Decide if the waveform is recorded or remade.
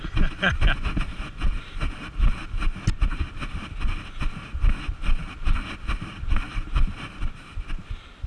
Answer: recorded